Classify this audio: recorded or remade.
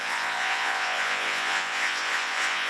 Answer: remade